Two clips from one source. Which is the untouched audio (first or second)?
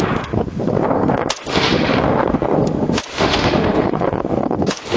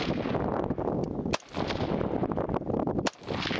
second